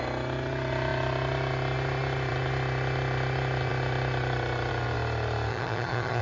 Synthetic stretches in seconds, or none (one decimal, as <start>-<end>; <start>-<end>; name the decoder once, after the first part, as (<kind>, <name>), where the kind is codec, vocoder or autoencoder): 5.5-6.2 (vocoder, HiFi-GAN)